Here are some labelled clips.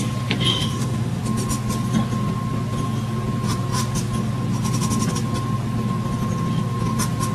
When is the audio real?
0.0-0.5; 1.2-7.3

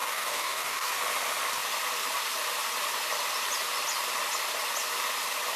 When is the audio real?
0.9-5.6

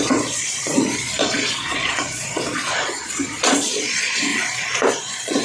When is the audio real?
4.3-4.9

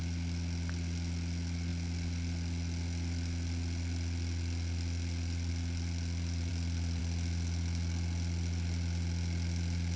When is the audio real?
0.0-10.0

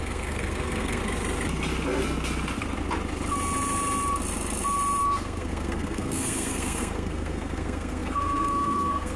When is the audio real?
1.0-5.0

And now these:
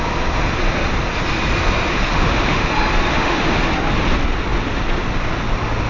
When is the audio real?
0.0-1.9; 2.7-3.1; 3.6-5.9

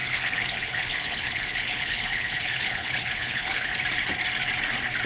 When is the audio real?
3.7-5.1